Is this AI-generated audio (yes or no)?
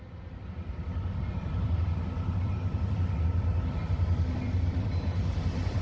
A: yes